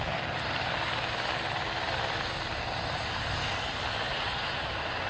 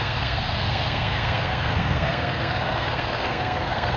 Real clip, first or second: first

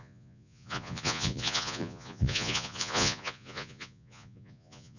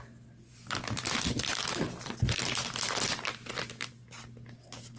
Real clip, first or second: second